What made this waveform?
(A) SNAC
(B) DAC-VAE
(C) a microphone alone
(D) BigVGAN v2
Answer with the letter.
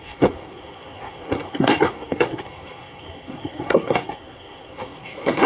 A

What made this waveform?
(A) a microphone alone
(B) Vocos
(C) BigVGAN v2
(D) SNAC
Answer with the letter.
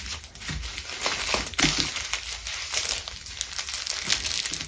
A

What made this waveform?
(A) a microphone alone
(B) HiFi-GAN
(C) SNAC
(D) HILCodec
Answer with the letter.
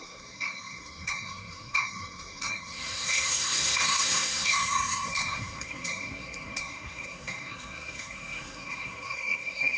C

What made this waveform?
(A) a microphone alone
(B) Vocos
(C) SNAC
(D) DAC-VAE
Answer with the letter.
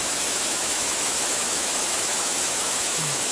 D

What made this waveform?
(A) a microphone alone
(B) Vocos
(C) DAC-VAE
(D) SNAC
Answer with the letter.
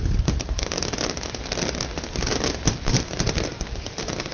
A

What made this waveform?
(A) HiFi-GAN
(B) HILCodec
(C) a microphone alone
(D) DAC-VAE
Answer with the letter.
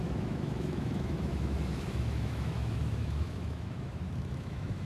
D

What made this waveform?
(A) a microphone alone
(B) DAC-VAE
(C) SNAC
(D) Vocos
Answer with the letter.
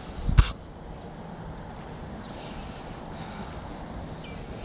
A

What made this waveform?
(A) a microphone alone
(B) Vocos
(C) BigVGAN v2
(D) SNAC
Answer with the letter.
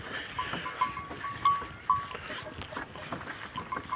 A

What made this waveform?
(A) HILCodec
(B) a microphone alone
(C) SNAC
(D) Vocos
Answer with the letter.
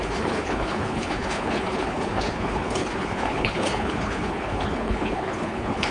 A